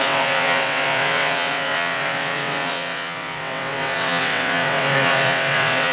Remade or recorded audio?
remade